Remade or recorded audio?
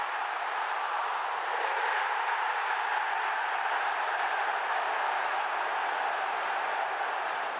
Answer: recorded